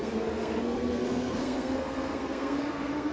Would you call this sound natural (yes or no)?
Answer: no